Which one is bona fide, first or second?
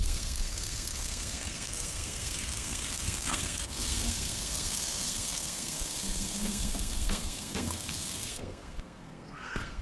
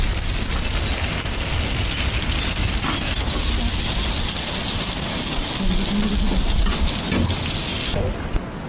second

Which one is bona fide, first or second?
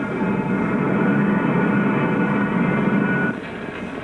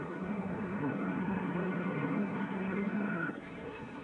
first